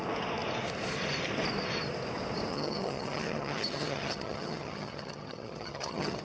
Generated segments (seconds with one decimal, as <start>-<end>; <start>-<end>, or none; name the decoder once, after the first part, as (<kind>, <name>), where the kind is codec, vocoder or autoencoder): 2.5-6.2 (vocoder, HiFi-GAN)